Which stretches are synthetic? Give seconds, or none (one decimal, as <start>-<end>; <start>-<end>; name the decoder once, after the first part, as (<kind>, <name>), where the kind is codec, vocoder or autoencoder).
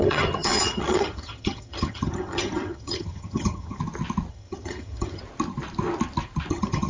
0.0-3.8 (vocoder, HiFi-GAN); 4.3-5.2; 6.5-6.9